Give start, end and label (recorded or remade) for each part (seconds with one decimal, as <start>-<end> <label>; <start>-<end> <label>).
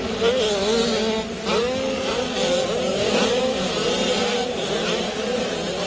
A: 0.0-2.9 recorded; 2.9-3.8 remade; 3.8-4.4 recorded; 4.4-5.9 remade